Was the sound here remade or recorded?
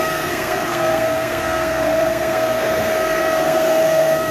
remade